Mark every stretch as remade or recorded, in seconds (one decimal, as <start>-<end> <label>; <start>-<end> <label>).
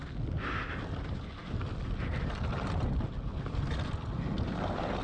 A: 0.0-5.0 recorded